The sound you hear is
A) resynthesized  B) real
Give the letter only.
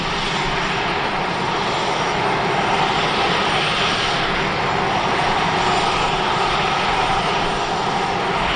B